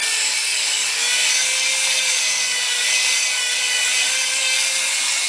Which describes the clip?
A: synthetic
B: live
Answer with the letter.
A